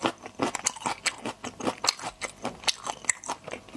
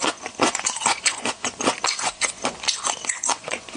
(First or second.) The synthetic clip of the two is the second